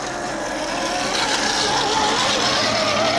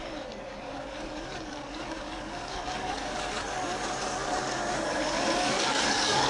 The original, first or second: first